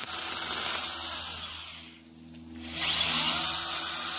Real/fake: real